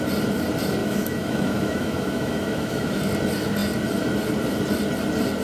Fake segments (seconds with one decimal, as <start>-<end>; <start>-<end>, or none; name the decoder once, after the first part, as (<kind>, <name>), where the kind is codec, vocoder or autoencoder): 0.8-3.0 (autoencoder, DAC-VAE)